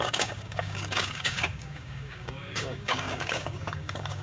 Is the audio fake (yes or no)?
yes